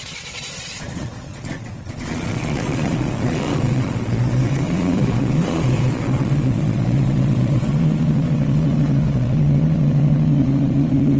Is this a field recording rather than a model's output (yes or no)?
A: no